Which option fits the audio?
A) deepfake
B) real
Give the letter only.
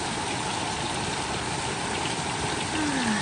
B